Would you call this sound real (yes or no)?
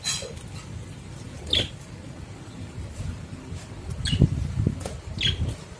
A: yes